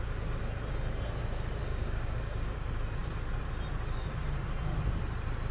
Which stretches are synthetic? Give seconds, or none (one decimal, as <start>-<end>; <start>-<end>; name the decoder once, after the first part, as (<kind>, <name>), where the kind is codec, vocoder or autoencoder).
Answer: 1.7-2.6 (codec, DAC)